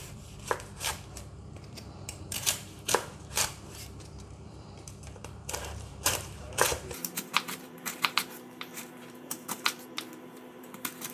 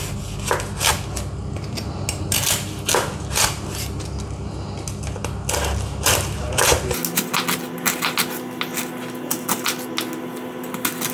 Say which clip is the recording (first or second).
second